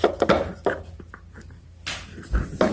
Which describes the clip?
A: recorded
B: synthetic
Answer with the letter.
A